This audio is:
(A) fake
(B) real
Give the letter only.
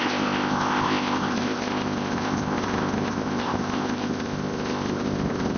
A